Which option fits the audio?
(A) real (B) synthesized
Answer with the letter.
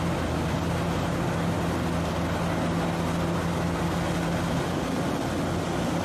A